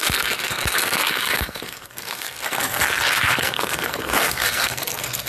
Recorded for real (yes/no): no